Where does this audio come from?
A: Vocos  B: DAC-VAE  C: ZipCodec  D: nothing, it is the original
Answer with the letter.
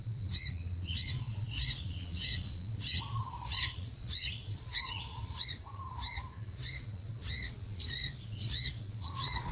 A